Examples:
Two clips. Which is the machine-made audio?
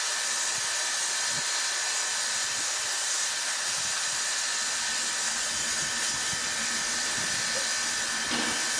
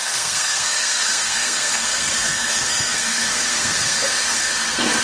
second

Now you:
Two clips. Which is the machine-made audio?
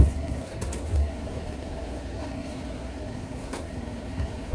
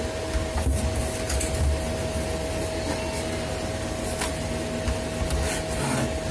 first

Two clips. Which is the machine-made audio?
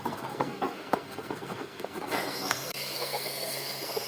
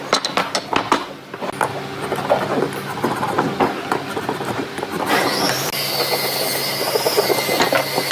first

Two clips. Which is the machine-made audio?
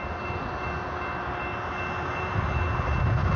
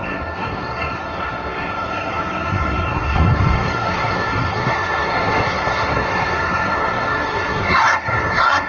second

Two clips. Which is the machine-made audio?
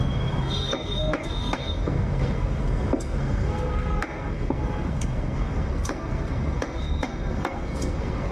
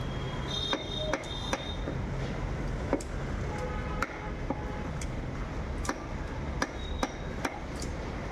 first